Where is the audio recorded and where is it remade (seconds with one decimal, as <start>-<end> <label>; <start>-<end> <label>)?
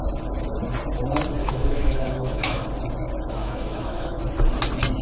0.0-1.4 recorded; 1.4-2.7 remade; 2.7-3.4 recorded; 3.4-4.2 remade; 4.2-5.0 recorded